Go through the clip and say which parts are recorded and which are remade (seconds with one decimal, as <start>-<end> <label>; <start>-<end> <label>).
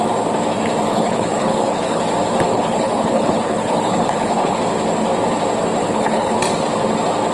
0.0-0.9 recorded; 0.9-2.0 remade; 2.0-2.5 recorded; 2.5-4.6 remade; 4.6-5.8 recorded; 5.8-6.4 remade; 6.4-7.3 recorded